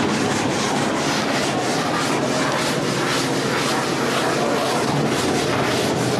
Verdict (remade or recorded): recorded